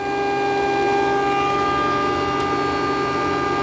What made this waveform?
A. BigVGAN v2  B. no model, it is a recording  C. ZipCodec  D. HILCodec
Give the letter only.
B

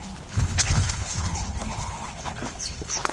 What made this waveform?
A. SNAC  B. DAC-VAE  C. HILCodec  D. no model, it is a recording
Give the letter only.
C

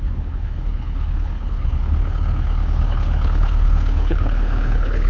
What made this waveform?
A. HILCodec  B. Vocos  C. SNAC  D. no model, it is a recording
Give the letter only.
A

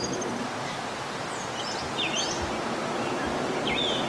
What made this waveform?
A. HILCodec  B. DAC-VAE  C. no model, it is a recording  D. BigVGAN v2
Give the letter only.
C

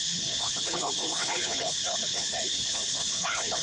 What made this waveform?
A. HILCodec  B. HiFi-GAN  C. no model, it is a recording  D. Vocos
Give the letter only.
A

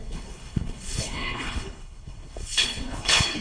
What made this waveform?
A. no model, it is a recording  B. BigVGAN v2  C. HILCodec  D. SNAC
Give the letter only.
C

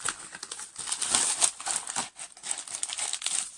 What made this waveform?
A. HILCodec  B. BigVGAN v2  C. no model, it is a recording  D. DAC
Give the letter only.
C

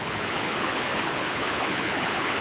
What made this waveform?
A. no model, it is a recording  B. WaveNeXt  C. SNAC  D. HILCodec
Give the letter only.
D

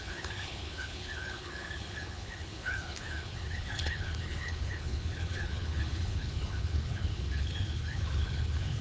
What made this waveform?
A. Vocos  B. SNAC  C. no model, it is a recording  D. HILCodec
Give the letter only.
D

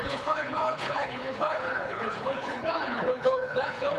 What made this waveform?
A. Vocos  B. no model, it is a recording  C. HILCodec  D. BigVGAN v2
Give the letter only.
C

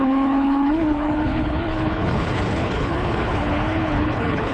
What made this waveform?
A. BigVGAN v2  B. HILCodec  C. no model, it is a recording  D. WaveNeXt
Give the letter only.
B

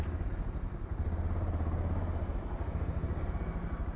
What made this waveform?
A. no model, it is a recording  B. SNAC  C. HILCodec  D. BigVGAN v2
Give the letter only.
A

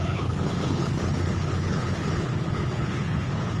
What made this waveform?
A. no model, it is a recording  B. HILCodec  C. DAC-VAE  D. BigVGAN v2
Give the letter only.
B